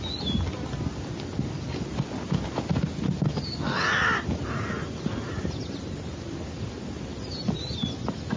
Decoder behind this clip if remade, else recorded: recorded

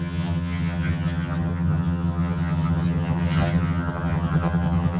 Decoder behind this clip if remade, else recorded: remade, vocoder, HiFi-GAN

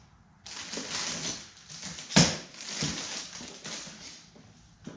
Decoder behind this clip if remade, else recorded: recorded